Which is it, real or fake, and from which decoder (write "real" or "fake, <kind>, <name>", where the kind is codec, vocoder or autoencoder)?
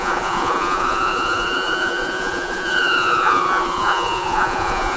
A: fake, vocoder, Vocos